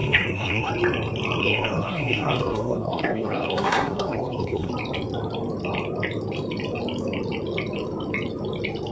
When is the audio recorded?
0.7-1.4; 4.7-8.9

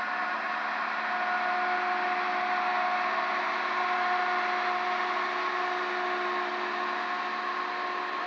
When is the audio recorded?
0.0-8.3

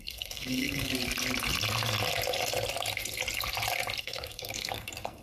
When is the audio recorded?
0.9-4.0

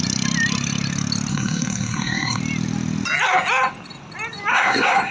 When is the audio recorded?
0.0-1.3; 2.4-4.5